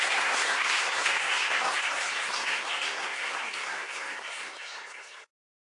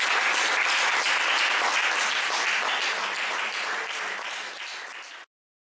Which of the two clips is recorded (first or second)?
second